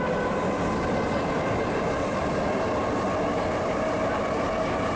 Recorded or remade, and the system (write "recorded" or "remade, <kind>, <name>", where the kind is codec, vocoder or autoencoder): recorded